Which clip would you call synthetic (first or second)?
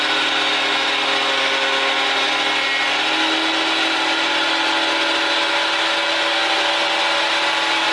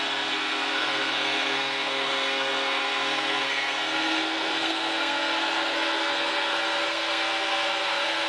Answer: second